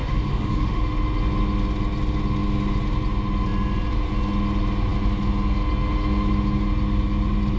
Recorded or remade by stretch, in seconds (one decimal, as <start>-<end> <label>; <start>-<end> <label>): 0.0-0.8 remade; 0.8-7.6 recorded